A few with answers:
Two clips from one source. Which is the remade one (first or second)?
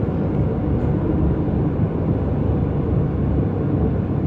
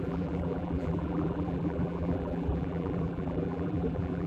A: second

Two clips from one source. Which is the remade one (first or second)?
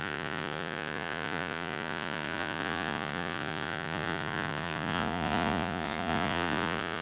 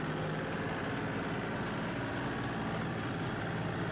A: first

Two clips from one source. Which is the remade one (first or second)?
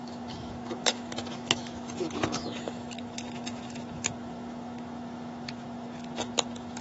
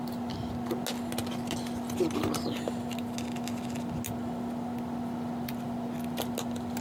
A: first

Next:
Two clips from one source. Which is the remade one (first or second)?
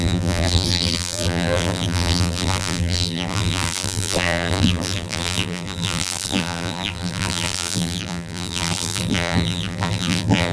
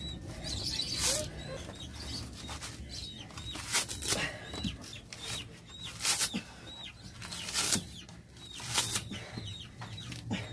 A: first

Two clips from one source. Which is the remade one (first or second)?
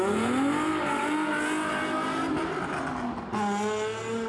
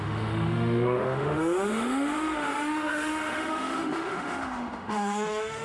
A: second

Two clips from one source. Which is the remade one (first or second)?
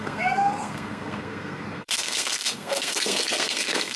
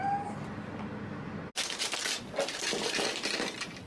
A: first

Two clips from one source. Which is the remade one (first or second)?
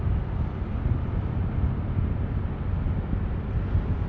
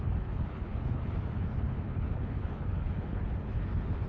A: second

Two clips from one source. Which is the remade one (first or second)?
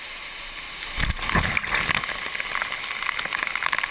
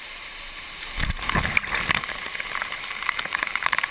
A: second